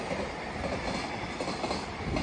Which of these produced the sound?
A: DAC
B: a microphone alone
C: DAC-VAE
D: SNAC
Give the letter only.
B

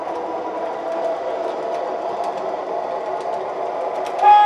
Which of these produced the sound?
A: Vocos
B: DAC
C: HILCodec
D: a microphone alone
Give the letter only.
D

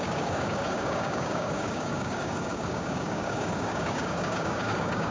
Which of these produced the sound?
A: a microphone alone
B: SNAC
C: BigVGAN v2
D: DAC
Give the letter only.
D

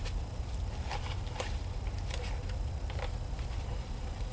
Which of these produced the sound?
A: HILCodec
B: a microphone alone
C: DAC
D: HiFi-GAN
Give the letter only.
B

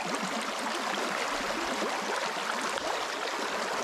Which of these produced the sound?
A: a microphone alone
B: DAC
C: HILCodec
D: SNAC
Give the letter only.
A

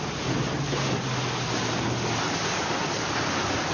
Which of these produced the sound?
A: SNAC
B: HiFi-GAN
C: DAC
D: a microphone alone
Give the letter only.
D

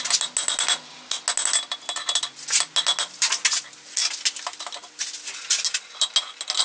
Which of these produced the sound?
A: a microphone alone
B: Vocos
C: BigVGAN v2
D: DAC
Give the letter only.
A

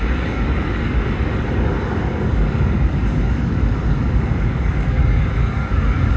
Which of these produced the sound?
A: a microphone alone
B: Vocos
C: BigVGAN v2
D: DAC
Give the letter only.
D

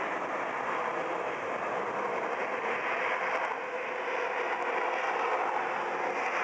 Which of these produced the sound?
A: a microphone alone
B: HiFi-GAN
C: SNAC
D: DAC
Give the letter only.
A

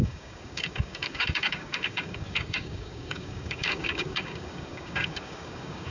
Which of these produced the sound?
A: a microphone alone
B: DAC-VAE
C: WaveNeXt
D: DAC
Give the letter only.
D